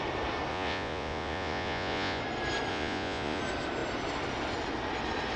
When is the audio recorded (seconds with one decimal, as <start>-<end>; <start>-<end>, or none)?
0.0-0.5; 2.2-2.7; 3.4-5.4